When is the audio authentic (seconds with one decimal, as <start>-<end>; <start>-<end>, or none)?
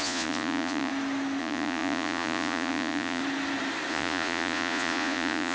0.9-1.4; 3.2-3.9